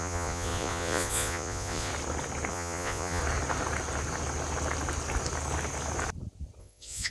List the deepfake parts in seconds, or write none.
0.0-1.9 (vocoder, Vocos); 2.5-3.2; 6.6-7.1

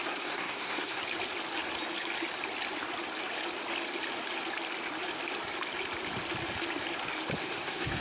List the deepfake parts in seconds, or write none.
0.0-1.0 (codec, SNAC); 7.4-8.0

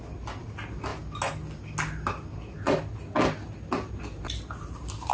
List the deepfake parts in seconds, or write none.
none

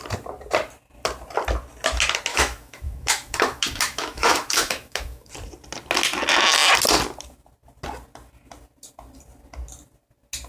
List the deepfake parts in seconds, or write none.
2.3-5.3 (autoencoder, DAC-VAE)

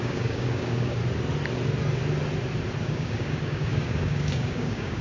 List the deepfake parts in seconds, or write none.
0.0-1.0 (codec, DAC); 2.8-5.0